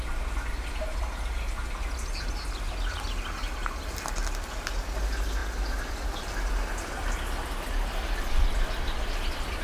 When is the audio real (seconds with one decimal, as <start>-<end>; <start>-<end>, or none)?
0.0-9.6